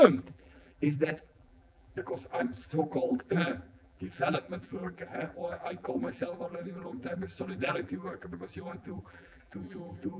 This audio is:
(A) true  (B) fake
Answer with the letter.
B